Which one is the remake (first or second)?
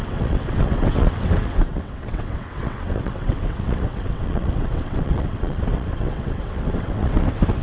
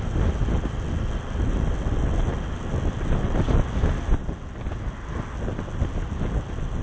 first